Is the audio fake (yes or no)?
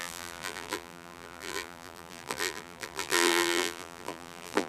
yes